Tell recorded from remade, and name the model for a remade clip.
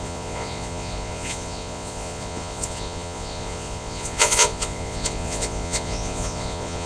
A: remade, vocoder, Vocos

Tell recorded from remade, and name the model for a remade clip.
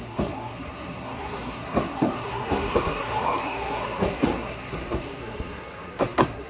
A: remade, codec, SNAC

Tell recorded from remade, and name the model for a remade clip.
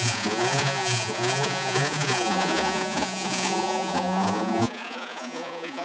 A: remade, vocoder, Vocos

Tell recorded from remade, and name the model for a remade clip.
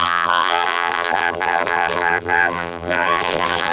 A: remade, vocoder, BigVGAN v2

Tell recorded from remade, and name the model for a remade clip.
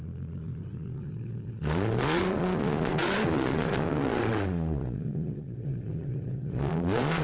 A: remade, vocoder, Vocos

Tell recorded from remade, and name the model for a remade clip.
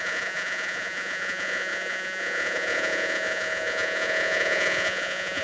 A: remade, vocoder, Vocos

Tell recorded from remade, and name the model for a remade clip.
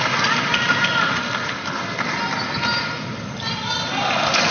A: recorded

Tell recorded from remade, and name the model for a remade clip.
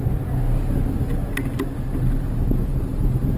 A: recorded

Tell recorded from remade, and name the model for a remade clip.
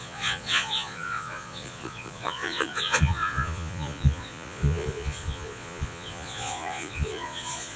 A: remade, vocoder, Vocos